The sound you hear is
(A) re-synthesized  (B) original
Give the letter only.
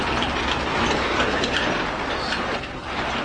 B